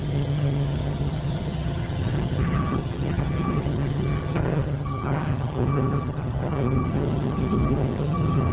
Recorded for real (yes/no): no